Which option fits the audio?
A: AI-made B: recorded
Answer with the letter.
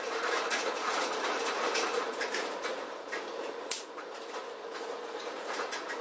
A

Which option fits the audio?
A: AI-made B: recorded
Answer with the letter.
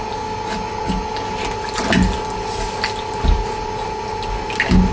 B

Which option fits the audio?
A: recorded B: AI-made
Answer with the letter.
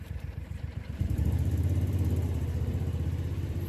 B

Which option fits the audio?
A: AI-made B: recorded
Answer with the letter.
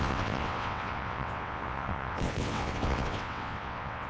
A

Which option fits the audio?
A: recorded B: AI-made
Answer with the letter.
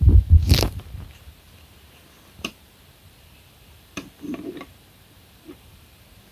B